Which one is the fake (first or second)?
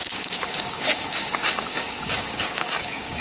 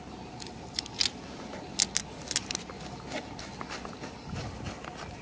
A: first